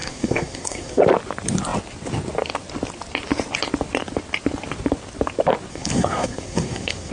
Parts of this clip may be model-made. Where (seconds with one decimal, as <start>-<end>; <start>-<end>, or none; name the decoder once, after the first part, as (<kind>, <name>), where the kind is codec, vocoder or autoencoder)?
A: 0.0-1.0 (codec, SNAC); 5.7-7.1